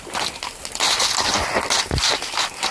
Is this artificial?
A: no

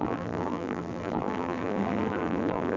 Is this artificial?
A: yes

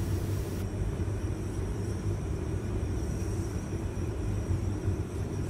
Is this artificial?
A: yes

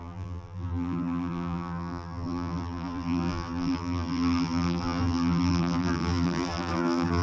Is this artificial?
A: yes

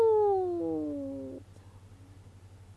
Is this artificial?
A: no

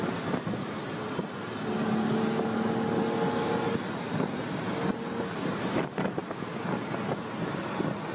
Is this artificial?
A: no